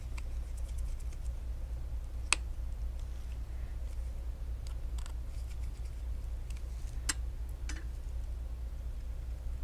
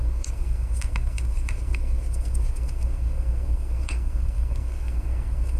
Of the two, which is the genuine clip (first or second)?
first